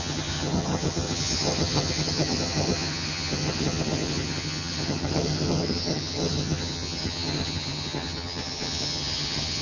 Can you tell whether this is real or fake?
fake